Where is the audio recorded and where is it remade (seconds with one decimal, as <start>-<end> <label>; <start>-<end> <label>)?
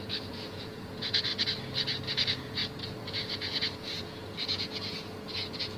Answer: 0.0-1.3 remade; 1.3-2.0 recorded; 2.0-5.8 remade